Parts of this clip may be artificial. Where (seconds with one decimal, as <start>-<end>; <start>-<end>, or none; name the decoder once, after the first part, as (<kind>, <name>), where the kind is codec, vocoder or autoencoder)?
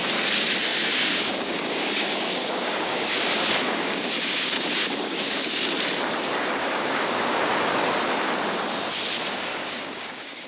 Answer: 0.7-5.6 (codec, DAC); 6.6-7.4; 9.5-10.5